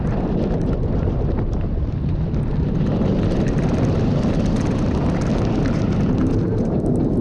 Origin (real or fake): real